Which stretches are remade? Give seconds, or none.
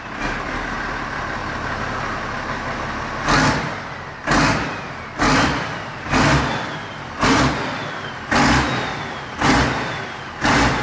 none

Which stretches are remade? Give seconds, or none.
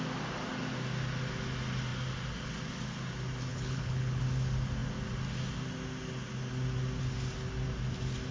3.5-4.2 (codec, HILCodec)